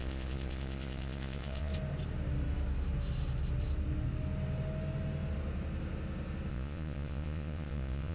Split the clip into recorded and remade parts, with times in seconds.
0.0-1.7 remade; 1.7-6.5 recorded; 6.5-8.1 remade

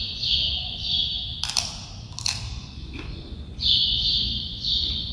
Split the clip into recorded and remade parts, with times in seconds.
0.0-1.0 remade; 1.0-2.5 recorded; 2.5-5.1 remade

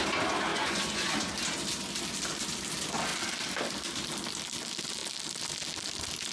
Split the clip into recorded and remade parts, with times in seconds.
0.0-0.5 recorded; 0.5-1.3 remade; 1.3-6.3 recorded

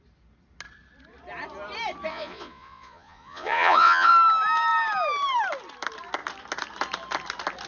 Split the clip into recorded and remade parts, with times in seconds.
0.0-2.1 recorded; 2.1-4.1 remade; 4.1-7.7 recorded